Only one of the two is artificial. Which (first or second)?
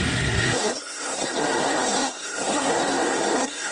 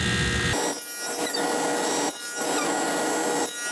first